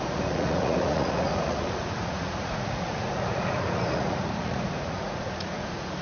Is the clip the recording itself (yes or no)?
no